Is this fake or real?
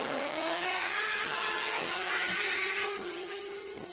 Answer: fake